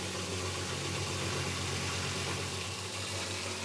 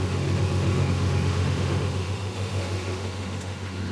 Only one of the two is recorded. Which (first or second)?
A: first